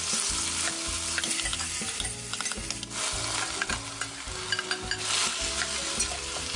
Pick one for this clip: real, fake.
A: real